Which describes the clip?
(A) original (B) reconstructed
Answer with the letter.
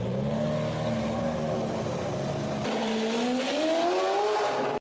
A